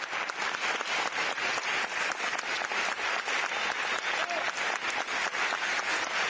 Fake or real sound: real